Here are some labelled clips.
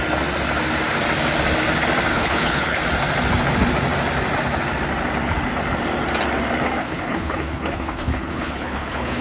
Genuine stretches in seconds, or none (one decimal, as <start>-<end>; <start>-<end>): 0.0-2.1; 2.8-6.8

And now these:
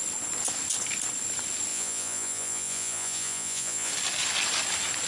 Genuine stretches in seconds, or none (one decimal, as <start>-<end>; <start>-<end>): 0.0-1.7; 3.9-5.1

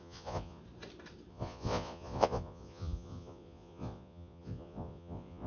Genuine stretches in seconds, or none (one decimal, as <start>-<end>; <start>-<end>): 0.6-1.3